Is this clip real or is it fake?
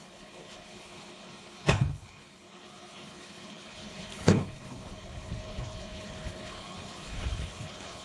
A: fake